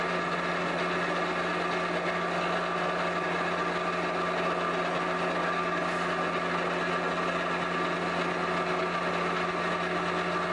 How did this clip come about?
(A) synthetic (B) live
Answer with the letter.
B